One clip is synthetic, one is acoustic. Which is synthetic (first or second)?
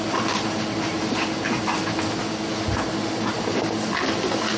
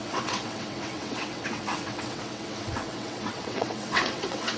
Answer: second